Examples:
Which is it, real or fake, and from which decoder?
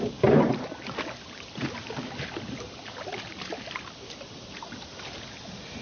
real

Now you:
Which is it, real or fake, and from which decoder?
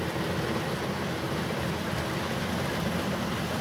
real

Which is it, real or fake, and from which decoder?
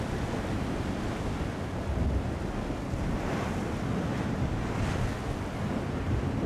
real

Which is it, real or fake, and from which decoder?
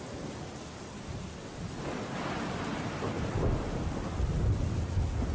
real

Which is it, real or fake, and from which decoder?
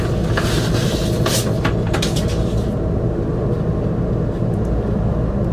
real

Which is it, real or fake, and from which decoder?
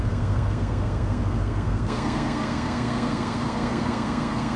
fake, codec, SNAC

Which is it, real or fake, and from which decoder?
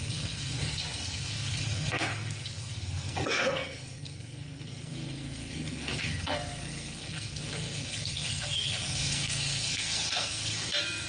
fake, codec, SNAC